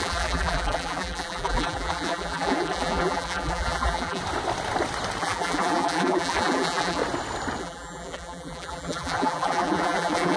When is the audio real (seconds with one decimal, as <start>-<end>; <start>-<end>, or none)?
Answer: 4.2-5.2; 7.0-7.6